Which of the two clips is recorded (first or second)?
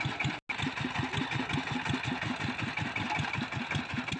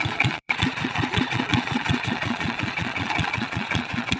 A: first